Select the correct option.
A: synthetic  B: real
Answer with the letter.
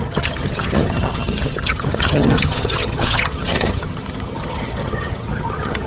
A